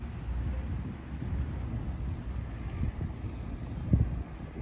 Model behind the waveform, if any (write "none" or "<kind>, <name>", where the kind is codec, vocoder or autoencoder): none